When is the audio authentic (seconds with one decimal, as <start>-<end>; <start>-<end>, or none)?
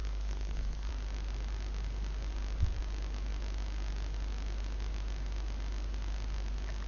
0.9-6.9